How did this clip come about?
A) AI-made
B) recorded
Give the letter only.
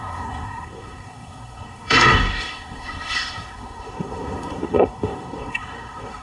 A